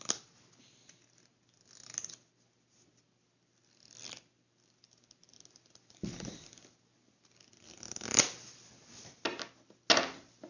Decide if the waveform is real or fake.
real